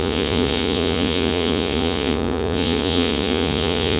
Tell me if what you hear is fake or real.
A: fake